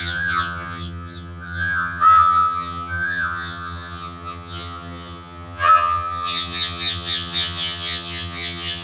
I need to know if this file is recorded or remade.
remade